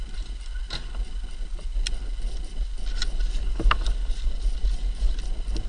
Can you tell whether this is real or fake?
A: real